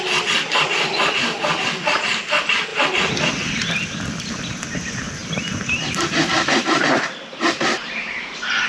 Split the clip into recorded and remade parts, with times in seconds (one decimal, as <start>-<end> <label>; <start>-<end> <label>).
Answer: 0.0-8.7 recorded